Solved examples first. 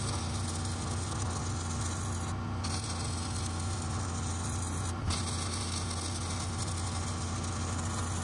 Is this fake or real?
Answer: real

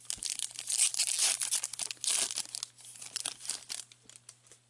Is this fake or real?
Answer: real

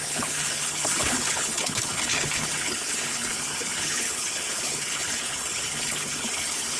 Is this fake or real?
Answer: fake